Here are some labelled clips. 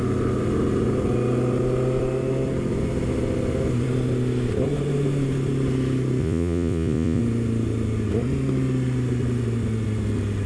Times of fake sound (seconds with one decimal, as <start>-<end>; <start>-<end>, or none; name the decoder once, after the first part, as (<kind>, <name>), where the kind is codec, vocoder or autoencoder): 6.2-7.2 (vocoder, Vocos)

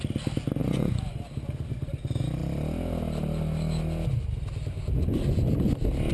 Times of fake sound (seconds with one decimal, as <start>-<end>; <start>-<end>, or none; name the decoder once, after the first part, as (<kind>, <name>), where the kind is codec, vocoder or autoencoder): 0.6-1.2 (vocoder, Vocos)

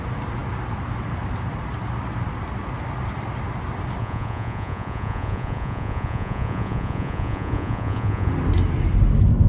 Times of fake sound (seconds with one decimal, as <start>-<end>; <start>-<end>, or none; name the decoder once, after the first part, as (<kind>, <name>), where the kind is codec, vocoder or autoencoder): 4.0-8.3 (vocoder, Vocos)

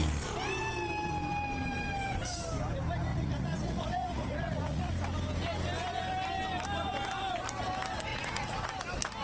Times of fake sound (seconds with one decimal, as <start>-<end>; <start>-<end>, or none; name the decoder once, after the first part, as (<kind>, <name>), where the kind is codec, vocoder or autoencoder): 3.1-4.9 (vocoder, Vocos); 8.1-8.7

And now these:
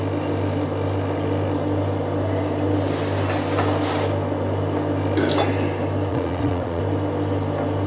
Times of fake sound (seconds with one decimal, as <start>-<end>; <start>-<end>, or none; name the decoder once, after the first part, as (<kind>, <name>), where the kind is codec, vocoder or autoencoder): 6.1-6.8 (vocoder, Vocos)